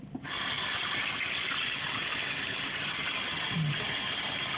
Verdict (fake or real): real